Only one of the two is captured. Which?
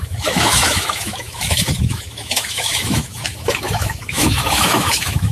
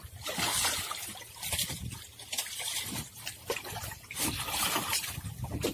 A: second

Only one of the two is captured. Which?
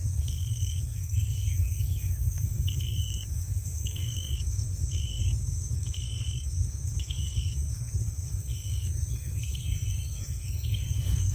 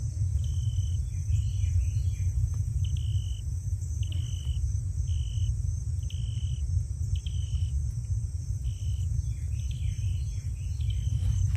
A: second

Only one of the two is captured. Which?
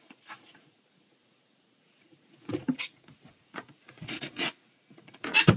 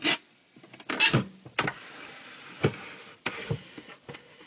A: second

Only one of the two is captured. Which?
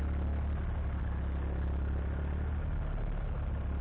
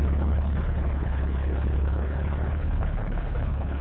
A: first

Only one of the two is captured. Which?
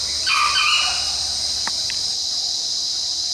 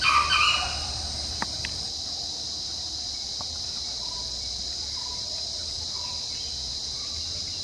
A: first